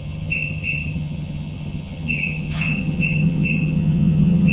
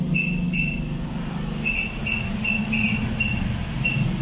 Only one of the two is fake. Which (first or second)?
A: first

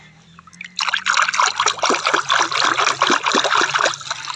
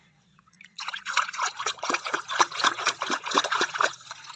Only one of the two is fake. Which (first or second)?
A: second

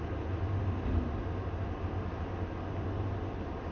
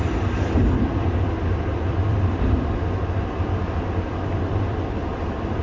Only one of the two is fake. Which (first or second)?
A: second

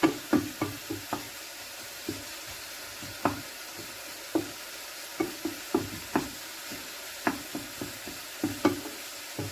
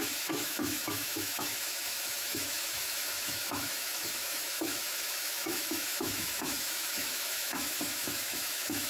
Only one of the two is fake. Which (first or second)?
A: second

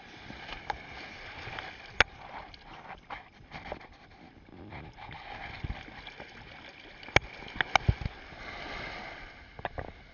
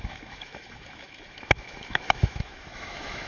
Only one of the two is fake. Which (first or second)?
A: second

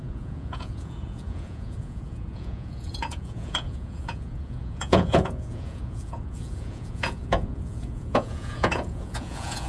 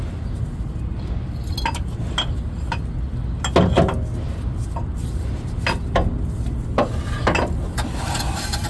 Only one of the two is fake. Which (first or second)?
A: first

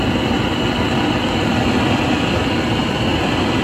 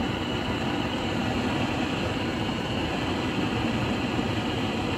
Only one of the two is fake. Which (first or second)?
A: second